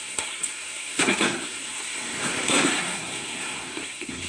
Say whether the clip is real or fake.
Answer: fake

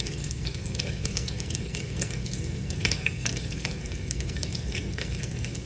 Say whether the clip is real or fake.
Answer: fake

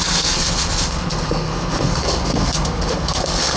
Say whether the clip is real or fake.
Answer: fake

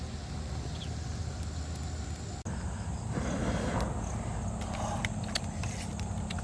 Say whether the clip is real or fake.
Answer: real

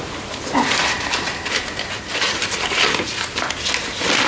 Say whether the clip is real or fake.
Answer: real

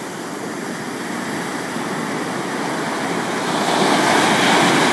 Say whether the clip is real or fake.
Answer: real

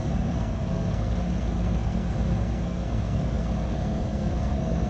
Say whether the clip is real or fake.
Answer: fake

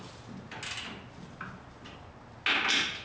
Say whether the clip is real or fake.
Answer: real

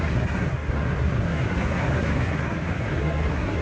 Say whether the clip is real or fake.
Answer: fake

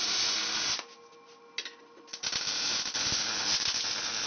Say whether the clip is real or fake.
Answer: real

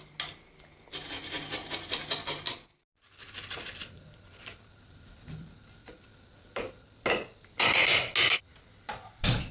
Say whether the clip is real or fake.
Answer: real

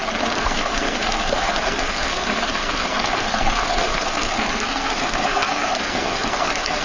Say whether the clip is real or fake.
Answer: fake